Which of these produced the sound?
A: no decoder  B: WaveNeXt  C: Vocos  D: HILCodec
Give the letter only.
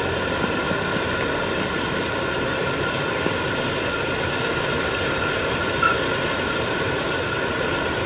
A